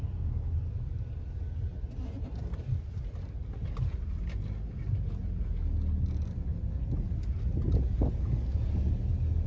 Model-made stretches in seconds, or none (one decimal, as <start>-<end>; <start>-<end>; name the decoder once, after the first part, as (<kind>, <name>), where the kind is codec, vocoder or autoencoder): none